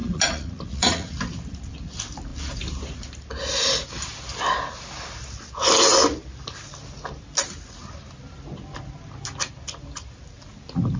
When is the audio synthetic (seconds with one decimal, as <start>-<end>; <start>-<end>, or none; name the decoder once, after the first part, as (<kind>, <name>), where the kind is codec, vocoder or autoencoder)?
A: 0.0-1.7 (vocoder, Vocos)